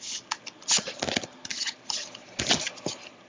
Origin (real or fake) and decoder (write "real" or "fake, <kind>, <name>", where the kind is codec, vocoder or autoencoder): real